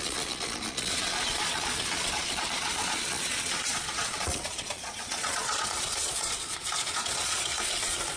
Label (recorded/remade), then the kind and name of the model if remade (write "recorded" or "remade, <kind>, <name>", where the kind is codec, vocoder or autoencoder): remade, vocoder, Vocos